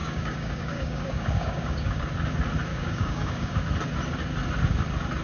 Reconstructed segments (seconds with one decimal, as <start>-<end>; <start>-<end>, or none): 0.0-2.1; 2.7-3.6